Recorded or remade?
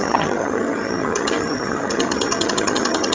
remade